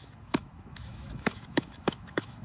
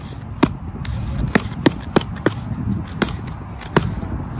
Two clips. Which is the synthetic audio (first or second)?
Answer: first